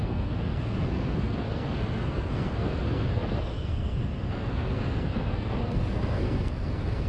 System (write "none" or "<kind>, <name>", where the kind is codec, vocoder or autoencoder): codec, SNAC